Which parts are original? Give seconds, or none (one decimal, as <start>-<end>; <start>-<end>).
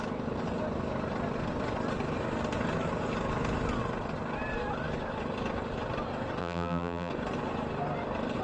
0.0-6.4; 7.1-8.4